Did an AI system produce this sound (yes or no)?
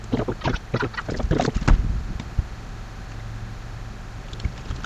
no